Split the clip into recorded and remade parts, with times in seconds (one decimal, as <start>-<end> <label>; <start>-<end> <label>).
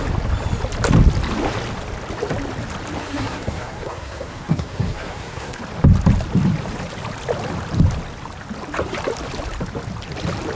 0.0-3.0 recorded; 3.0-5.6 remade; 5.6-10.6 recorded